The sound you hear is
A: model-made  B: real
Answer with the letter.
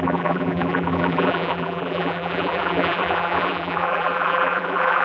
A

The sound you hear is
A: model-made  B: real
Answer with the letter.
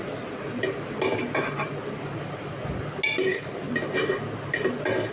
B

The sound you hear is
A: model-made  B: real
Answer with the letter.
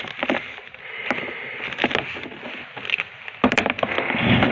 B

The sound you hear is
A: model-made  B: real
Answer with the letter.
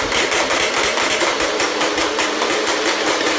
B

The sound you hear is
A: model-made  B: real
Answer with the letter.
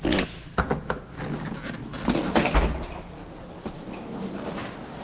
B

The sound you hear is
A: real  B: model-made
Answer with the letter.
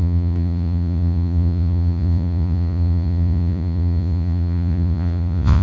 B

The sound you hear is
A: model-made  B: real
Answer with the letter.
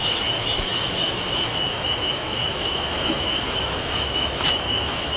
A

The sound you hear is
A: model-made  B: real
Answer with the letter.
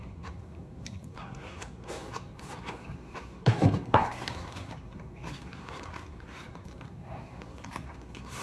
A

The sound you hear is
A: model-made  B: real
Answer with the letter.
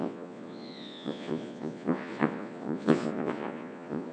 A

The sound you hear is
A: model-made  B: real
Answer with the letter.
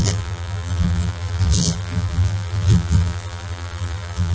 A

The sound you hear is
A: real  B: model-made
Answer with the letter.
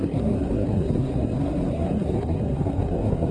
B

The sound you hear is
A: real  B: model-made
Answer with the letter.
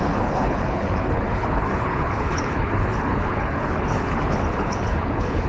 B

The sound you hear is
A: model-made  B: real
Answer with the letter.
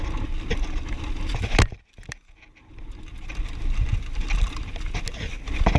B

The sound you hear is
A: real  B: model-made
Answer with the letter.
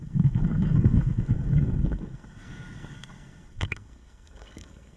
B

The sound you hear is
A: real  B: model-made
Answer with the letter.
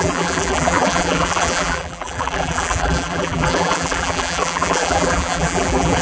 B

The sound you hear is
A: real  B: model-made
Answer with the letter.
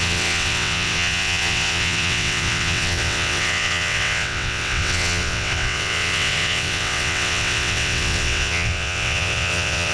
B